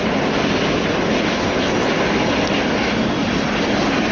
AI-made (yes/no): no